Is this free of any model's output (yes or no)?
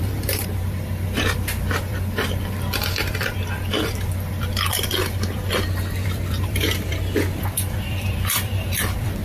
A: no